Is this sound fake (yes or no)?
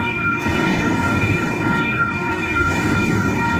yes